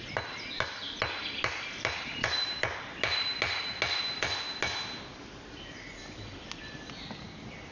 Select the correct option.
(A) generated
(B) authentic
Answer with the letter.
B